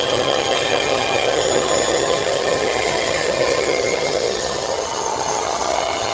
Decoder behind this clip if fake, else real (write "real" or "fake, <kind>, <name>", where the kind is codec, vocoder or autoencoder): fake, vocoder, HiFi-GAN